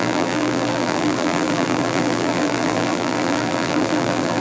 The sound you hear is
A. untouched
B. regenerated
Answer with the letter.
B